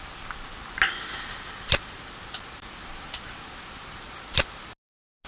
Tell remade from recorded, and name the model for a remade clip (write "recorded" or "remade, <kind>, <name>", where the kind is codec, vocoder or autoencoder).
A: recorded